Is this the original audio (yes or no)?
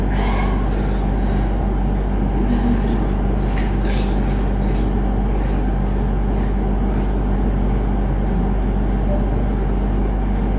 yes